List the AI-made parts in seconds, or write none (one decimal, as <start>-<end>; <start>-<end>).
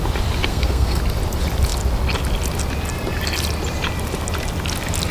0.5-1.0